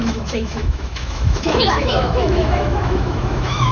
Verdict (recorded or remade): remade